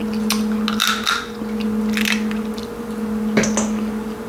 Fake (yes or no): no